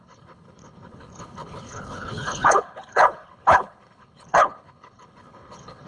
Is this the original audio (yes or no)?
no